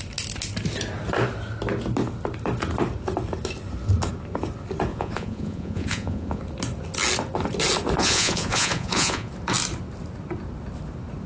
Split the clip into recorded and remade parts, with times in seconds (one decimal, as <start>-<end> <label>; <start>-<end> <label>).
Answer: 0.0-4.9 recorded; 4.9-6.4 remade; 6.4-8.0 recorded; 8.0-9.3 remade; 9.3-11.3 recorded